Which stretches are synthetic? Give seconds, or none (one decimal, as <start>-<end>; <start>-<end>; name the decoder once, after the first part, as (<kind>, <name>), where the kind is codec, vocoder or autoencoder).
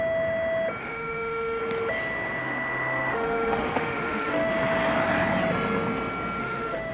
0.8-1.6 (autoencoder, DAC-VAE); 2.4-4.5; 6.4-6.9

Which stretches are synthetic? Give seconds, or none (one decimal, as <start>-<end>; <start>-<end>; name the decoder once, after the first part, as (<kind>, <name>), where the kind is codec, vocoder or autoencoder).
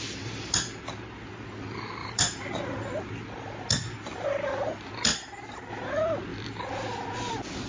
2.0-3.1 (vocoder, BigVGAN v2); 5.1-5.7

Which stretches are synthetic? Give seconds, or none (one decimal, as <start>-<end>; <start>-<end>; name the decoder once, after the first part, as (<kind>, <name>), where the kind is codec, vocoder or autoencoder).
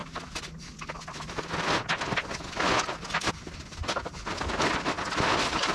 none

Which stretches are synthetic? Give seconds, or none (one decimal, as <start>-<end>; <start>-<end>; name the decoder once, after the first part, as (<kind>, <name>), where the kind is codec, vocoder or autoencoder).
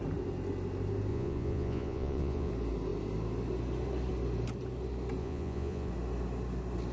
1.1-2.5 (vocoder, Vocos); 5.2-5.9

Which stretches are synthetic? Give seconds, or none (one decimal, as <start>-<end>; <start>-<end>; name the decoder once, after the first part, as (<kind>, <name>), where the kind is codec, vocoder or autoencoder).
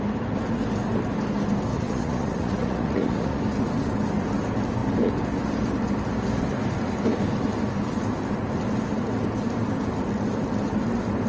1.7-3.4 (vocoder, Vocos)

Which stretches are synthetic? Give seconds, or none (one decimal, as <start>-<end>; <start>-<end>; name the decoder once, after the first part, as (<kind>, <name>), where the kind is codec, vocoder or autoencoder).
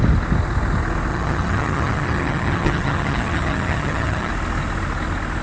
1.1-4.3 (vocoder, HiFi-GAN)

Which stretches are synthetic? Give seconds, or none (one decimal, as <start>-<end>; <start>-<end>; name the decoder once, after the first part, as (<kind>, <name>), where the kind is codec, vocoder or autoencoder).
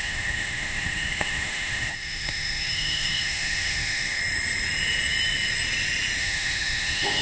0.0-4.2 (autoencoder, DAC-VAE); 6.2-7.2